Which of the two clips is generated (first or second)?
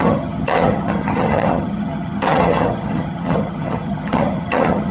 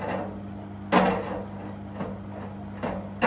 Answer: first